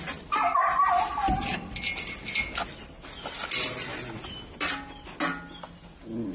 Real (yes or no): yes